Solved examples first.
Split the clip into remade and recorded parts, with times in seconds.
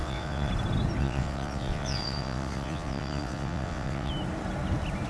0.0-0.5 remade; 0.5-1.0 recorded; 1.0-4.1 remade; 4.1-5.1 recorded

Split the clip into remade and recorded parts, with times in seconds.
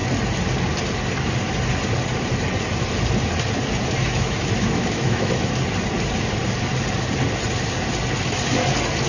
0.0-4.0 recorded; 4.0-5.5 remade; 5.5-9.1 recorded